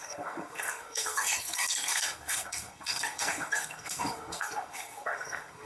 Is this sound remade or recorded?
remade